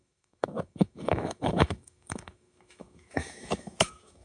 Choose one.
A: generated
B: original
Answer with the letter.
A